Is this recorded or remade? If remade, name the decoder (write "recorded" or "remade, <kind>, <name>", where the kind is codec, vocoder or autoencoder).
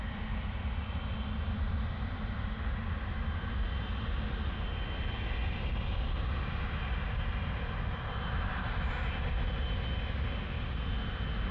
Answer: recorded